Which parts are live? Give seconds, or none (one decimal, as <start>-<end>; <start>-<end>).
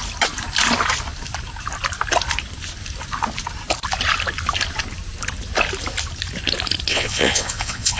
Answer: 0.0-6.9